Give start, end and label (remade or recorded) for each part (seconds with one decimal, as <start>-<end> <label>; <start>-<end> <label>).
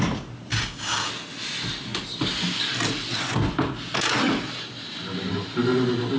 0.0-0.5 recorded; 0.5-1.1 remade; 1.1-6.2 recorded